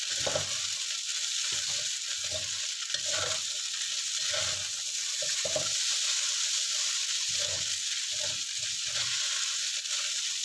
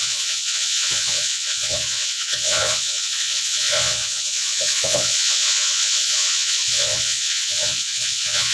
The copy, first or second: second